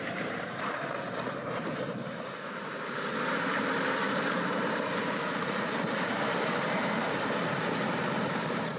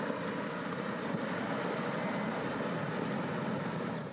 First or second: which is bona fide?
second